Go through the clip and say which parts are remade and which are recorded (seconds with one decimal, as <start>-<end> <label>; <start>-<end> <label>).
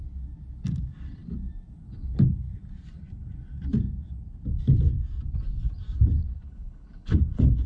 0.0-6.2 recorded; 6.2-7.7 remade